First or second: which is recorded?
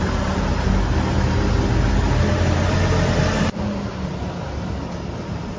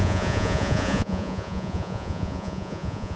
first